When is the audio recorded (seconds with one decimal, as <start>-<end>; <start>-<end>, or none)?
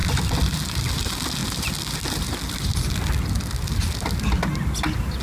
0.0-5.2